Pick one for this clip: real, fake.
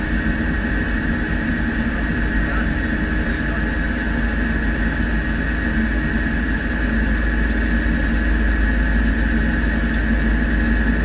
real